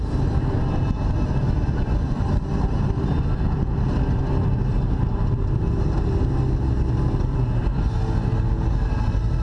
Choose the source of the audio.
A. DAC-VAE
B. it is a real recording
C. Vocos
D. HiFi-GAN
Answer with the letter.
B